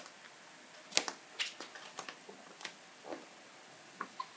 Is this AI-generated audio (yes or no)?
no